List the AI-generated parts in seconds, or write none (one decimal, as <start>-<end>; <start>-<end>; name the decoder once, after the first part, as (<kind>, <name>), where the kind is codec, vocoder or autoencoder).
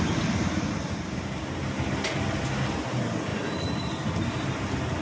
none